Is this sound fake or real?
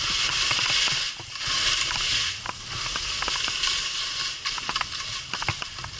real